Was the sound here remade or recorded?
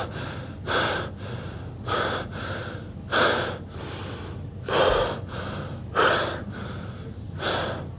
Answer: recorded